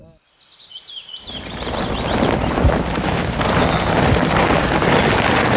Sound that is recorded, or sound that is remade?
recorded